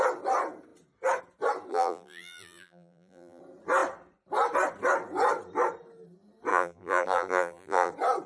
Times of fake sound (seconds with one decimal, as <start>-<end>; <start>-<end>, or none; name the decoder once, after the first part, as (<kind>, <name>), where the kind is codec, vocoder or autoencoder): 1.7-3.4 (vocoder, BigVGAN v2); 6.5-7.9